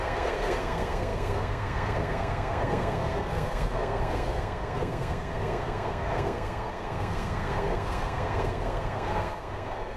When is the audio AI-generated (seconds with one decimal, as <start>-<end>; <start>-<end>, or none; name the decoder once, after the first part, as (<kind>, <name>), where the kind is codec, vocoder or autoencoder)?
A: 0.0-10.0 (codec, SNAC)